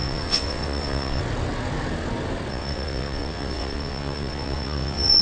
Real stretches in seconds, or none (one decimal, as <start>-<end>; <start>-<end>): 1.2-2.5